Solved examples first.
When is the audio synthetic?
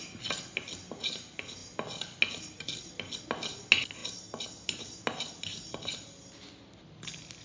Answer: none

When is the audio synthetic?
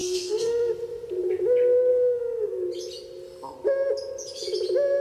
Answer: 0.0-0.7 (codec, SNAC); 1.9-2.5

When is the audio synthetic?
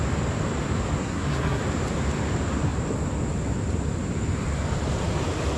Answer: 1.0-1.6 (codec, SNAC)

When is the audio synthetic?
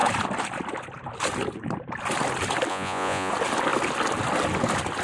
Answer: 2.7-3.3 (vocoder, Vocos)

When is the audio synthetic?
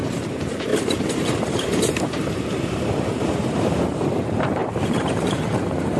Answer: 0.0-6.0 (vocoder, BigVGAN v2)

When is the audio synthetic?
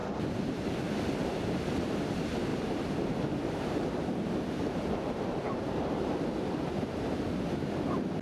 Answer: 2.5-6.7 (vocoder, BigVGAN v2)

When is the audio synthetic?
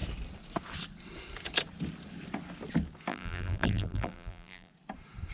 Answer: 3.1-4.7 (vocoder, BigVGAN v2)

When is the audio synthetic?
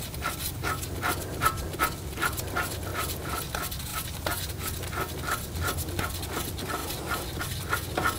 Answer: 2.9-3.4 (vocoder, BigVGAN v2); 6.8-7.4